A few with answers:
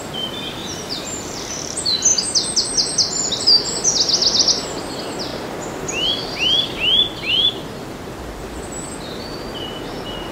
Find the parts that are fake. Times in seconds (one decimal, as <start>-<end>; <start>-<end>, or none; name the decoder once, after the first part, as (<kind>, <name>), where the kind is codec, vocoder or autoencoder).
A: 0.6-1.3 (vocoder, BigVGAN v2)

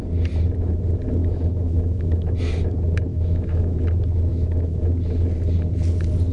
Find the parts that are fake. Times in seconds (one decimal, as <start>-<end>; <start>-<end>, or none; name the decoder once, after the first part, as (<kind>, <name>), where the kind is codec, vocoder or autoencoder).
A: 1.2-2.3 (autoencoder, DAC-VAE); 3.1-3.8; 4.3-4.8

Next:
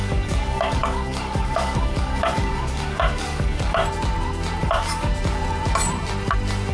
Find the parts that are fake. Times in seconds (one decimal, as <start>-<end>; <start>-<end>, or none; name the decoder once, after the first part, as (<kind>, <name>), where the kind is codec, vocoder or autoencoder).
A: 0.0-3.8 (codec, DAC); 4.6-5.1

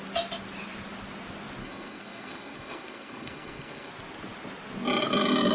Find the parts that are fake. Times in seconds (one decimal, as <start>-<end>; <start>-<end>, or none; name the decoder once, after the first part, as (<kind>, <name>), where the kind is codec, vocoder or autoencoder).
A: 1.6-3.9 (codec, SNAC)